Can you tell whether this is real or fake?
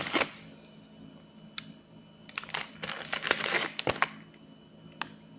real